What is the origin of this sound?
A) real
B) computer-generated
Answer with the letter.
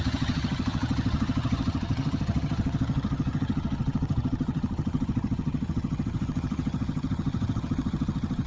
B